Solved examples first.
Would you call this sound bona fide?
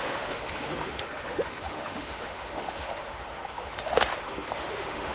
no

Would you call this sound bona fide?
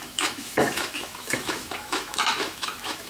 no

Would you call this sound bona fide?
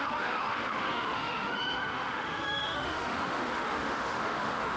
no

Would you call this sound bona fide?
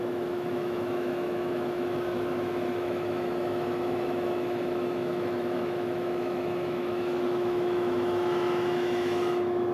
no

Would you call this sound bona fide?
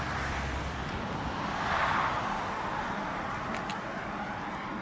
yes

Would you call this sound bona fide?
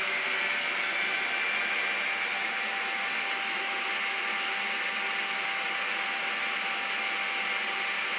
yes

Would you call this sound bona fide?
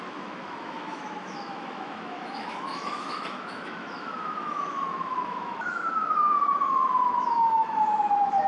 no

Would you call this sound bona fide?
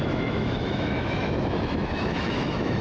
no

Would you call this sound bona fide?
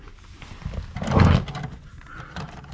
yes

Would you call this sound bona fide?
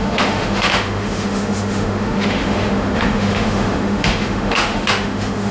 no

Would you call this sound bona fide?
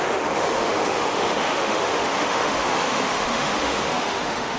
no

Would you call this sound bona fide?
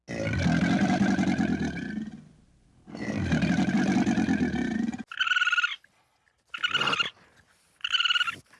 yes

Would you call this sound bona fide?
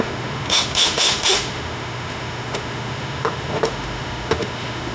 no